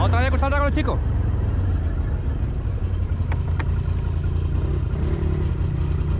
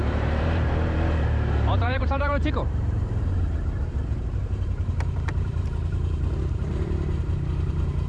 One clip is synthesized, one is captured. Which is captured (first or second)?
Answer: first